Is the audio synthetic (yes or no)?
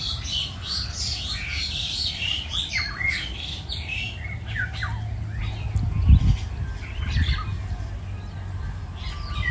no